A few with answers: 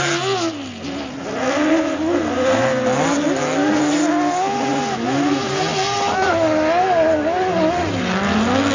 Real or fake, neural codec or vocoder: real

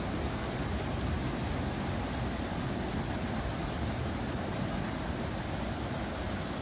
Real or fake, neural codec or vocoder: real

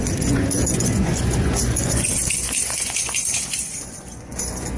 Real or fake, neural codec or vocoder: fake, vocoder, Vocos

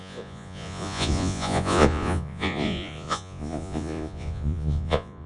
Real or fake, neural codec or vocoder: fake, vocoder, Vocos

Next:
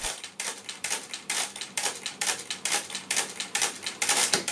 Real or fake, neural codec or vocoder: real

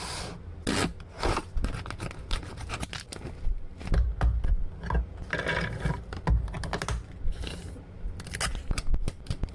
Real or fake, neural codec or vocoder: real